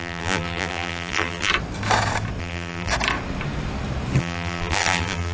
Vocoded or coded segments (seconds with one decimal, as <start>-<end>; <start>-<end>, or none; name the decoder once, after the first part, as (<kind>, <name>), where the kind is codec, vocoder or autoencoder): 0.0-1.5 (vocoder, BigVGAN v2); 2.4-2.9; 4.2-5.3